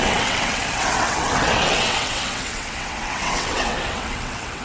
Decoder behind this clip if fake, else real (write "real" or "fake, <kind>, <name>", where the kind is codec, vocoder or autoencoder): fake, vocoder, WaveNeXt